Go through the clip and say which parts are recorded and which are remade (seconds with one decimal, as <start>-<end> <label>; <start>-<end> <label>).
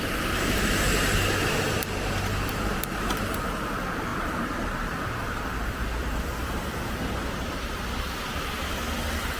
0.0-2.3 recorded; 2.3-3.3 remade; 3.3-4.1 recorded; 4.1-7.5 remade; 7.5-9.4 recorded